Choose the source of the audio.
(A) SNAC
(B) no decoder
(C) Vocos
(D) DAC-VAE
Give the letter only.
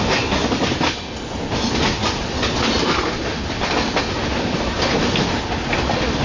B